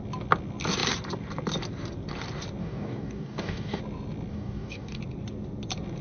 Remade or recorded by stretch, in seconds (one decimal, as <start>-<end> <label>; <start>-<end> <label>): 0.0-2.6 recorded; 2.6-3.8 remade; 3.8-4.3 recorded; 4.3-5.0 remade; 5.0-6.0 recorded

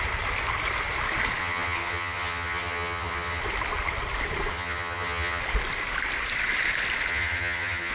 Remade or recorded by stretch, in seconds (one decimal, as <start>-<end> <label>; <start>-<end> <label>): 0.0-1.4 recorded; 1.4-3.4 remade; 3.4-4.5 recorded; 4.5-5.4 remade; 5.4-7.1 recorded; 7.1-7.9 remade

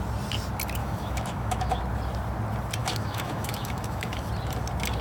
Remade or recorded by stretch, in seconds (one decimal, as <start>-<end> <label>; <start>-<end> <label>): 0.0-0.8 recorded; 0.8-1.8 remade; 1.8-2.8 recorded; 2.8-4.3 remade; 4.3-5.0 recorded

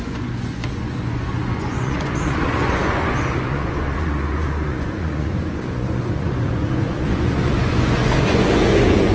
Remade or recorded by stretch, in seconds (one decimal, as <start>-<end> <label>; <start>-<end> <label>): 0.0-9.1 remade

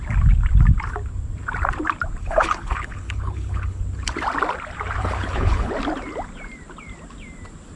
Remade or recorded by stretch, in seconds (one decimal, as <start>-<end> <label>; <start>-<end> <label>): 0.0-2.2 recorded; 2.2-3.8 remade; 3.8-5.0 recorded; 5.0-5.7 remade; 5.7-7.8 recorded